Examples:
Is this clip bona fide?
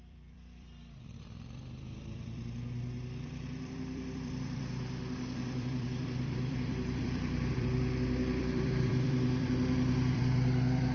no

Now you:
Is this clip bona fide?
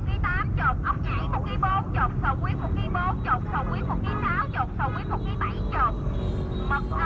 yes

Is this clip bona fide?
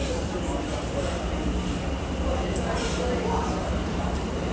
yes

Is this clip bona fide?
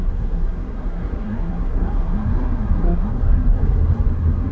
no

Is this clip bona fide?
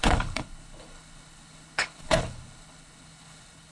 no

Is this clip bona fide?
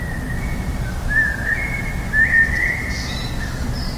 no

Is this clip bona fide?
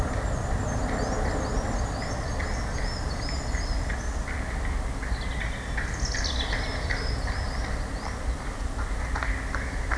yes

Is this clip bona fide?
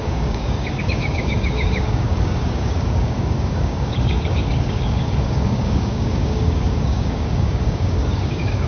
no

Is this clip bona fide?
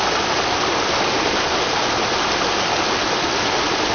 yes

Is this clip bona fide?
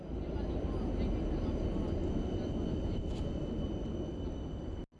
yes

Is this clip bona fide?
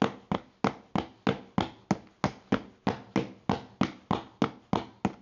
yes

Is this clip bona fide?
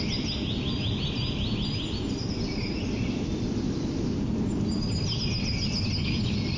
yes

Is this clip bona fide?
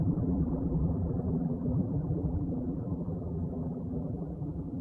no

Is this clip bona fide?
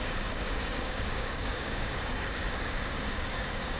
no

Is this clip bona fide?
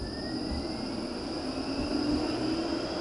yes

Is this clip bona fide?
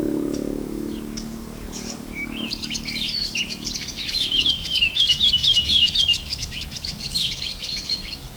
no